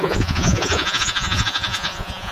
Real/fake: fake